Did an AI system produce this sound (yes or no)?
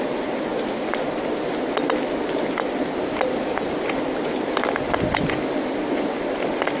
no